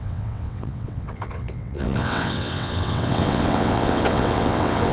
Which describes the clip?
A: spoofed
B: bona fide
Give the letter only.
A